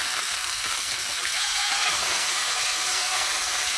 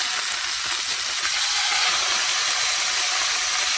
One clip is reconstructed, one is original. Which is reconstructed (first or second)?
first